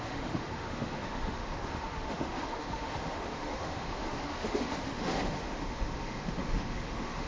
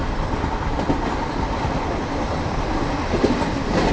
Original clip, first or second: second